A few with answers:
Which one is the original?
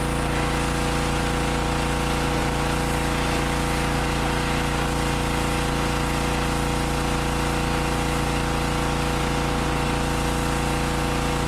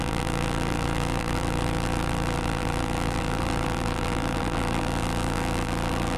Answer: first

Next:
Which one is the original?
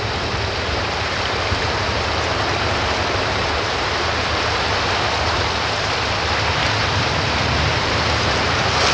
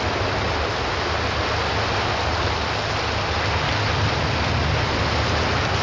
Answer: second